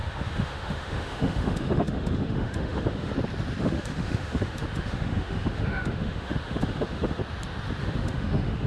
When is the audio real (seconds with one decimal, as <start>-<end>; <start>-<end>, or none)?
3.1-3.6; 7.2-7.8